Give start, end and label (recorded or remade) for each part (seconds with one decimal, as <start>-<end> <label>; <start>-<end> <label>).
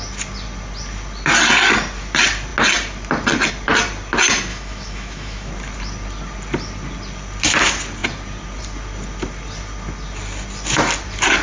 0.0-4.5 recorded; 4.5-5.5 remade; 5.5-11.4 recorded